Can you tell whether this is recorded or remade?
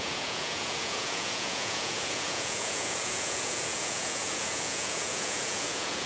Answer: remade